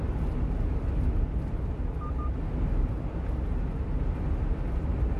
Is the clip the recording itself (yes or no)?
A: yes